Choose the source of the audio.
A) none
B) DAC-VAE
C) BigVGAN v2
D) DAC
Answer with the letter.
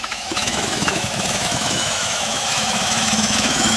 B